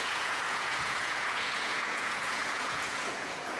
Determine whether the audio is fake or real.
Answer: fake